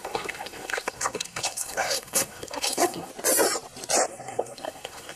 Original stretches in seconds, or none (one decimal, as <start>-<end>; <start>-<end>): 3.1-4.1